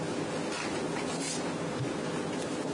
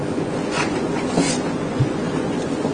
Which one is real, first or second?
first